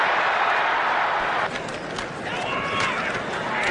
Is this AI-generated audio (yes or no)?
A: no